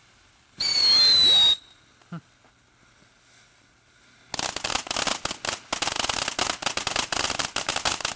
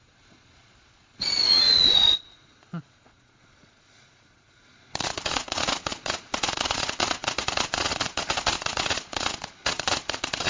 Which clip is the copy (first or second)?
second